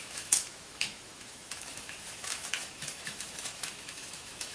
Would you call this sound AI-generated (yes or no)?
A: yes